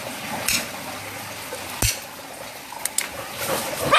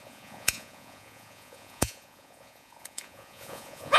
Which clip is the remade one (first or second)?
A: second